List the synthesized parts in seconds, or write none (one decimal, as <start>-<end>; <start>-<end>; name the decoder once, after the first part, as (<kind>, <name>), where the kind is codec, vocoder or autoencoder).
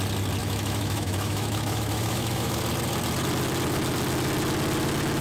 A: 0.4-2.6 (autoencoder, DAC-VAE)